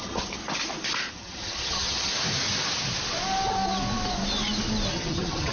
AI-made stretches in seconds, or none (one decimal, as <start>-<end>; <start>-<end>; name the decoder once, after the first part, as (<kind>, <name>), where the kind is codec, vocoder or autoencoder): 0.0-0.4 (vocoder, HiFi-GAN); 1.1-2.1; 4.9-5.5